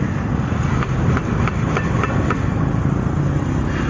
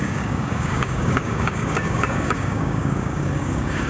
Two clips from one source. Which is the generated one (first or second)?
second